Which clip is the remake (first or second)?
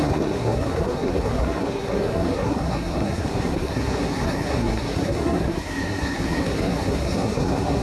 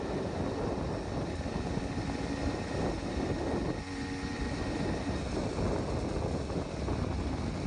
first